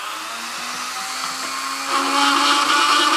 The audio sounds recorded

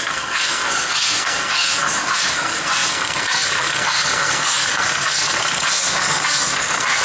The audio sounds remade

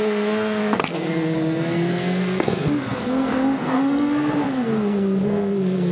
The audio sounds remade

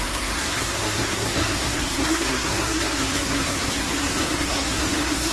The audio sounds remade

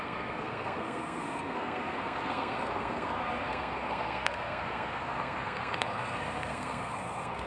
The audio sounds remade